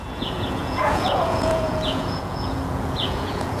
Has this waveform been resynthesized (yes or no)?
yes